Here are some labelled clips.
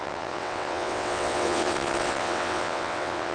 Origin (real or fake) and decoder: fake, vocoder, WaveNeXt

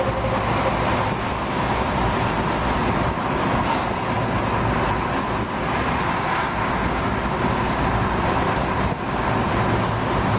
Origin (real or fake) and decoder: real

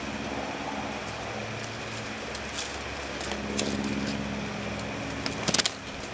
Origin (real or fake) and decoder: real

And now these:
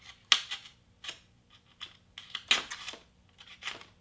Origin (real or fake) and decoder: real